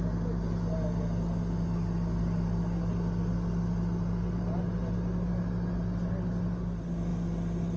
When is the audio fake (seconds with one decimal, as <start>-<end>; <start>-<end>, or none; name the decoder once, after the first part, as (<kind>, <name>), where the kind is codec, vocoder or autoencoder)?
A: none